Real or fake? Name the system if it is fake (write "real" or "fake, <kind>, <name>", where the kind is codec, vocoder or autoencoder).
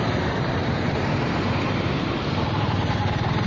fake, vocoder, BigVGAN v2